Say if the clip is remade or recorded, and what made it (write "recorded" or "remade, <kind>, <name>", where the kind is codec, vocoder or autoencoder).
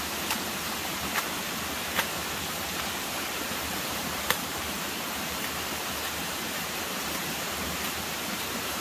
remade, vocoder, BigVGAN v2